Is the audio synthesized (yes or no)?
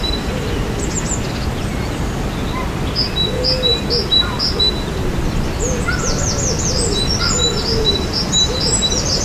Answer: no